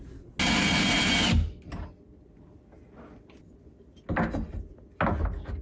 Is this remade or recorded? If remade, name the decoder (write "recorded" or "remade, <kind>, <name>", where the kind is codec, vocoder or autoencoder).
recorded